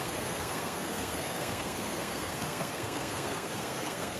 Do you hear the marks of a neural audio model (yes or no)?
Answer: yes